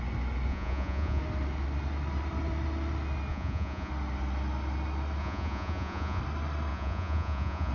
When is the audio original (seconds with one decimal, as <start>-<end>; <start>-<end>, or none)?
0.0-0.5; 1.2-3.3; 3.9-5.2; 6.2-6.7